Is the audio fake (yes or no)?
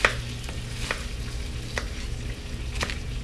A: no